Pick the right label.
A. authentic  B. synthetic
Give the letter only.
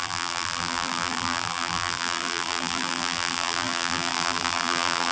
B